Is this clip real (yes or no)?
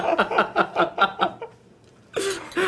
yes